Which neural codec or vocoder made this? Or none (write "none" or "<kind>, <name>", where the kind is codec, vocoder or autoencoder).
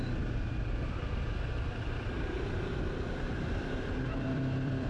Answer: vocoder, BigVGAN v2